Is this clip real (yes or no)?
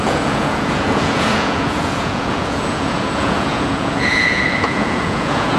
no